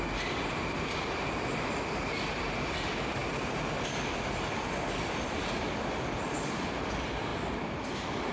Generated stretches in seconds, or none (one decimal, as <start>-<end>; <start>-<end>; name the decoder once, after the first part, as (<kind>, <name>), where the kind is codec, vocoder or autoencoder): none